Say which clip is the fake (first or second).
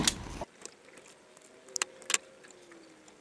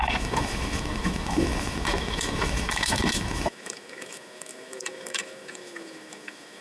second